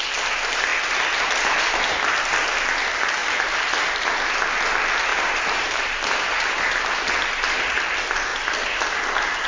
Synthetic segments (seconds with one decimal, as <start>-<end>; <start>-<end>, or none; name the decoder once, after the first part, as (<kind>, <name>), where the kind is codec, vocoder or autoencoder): 3.2-3.7 (vocoder, BigVGAN v2); 5.1-6.7